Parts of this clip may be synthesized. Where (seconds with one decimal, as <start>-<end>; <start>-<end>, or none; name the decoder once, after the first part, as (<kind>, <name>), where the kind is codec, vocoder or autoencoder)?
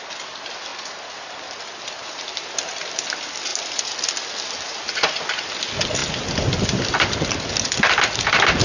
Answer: none